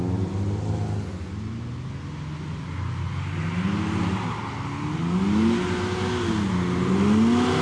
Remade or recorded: recorded